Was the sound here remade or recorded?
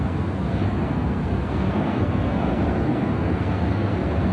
remade